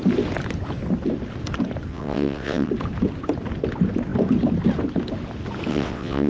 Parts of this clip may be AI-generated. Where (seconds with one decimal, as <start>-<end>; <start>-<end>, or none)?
1.9-2.7; 5.7-6.3